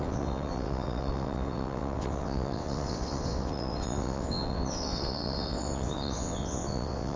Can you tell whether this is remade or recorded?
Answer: remade